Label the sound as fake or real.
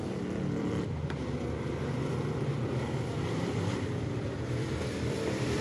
fake